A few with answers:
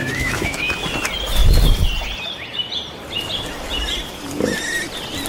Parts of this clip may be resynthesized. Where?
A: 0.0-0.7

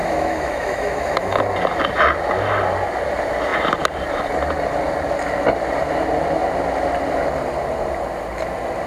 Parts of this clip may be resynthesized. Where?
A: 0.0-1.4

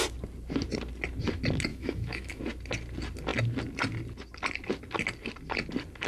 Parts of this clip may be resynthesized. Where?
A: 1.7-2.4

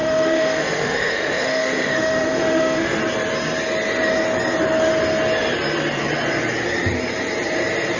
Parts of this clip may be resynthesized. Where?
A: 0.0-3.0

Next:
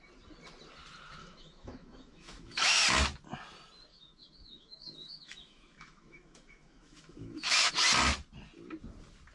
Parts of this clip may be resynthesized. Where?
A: 1.2-2.8; 3.9-7.7

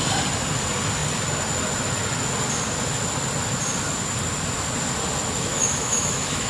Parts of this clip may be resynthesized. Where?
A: 5.5-6.5

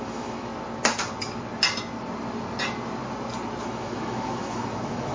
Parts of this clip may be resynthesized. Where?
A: 0.0-0.5; 3.6-5.1

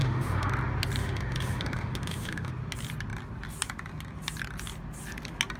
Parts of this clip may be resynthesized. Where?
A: 0.0-0.5; 1.0-2.5